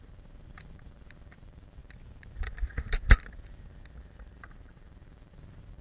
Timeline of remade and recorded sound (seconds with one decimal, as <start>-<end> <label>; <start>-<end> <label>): 0.0-1.8 remade; 1.8-4.4 recorded; 4.4-5.8 remade